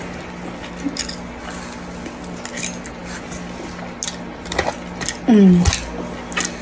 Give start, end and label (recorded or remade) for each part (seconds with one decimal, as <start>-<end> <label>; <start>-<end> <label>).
0.0-6.6 recorded